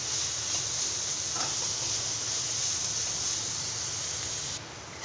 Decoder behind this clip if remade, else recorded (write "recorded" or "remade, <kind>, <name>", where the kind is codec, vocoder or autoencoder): recorded